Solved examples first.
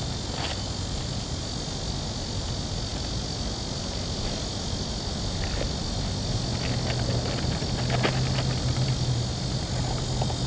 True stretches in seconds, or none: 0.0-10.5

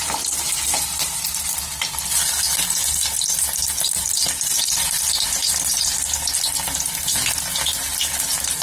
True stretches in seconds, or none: 0.0-8.6